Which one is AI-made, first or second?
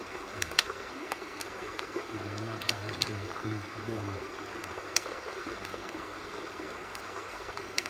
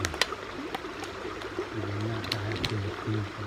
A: first